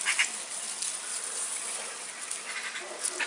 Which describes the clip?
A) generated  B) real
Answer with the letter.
B